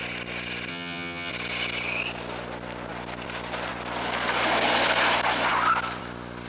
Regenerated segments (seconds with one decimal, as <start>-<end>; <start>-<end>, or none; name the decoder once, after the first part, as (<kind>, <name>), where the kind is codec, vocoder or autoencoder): 0.7-1.3 (vocoder, HiFi-GAN)